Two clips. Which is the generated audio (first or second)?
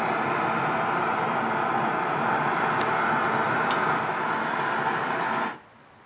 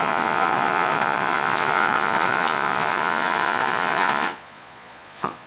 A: second